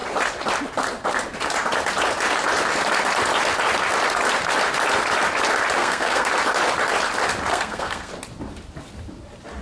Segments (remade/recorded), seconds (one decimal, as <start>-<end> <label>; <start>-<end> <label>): 0.0-5.8 recorded; 5.8-6.3 remade; 6.3-7.5 recorded; 7.5-8.1 remade; 8.1-9.6 recorded

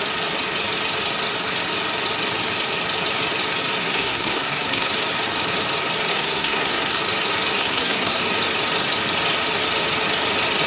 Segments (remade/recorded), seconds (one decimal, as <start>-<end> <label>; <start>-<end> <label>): 0.0-3.8 recorded; 3.8-4.9 remade; 4.9-6.1 recorded; 6.1-7.0 remade; 7.0-7.6 recorded; 7.6-8.2 remade; 8.2-10.7 recorded

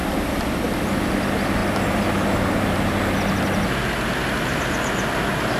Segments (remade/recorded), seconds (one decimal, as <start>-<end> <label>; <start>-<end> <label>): 0.0-5.6 recorded